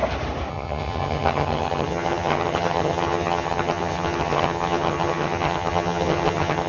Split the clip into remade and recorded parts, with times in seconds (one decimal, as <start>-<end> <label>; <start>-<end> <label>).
0.0-0.5 recorded; 0.5-6.7 remade